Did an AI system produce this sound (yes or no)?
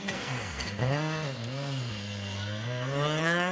yes